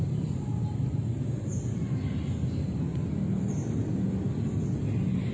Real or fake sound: real